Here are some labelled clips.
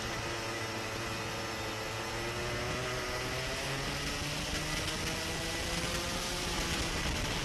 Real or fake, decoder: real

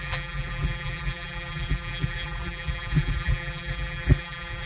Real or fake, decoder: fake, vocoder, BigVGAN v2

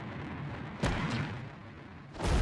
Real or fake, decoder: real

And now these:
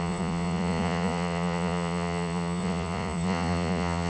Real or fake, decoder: fake, vocoder, Vocos